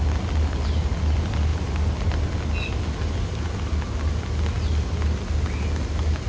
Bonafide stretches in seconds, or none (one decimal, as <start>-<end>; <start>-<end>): 0.0-6.3